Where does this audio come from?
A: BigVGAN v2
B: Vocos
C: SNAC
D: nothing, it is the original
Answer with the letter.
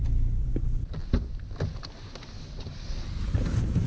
D